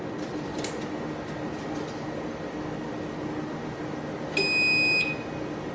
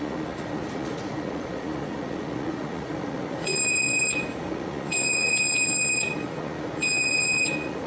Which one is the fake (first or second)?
second